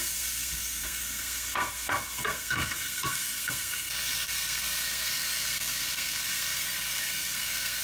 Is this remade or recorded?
remade